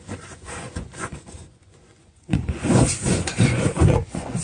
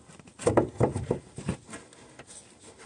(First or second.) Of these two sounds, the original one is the second